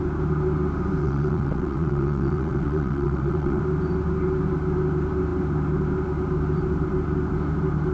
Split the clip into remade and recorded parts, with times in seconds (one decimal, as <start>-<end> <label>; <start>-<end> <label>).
0.0-1.0 recorded; 1.0-3.6 remade; 3.6-7.9 recorded